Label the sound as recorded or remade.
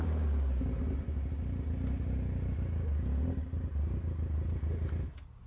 recorded